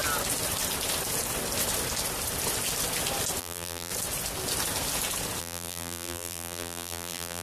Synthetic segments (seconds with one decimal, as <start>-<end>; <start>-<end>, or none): 3.4-3.9; 5.4-7.4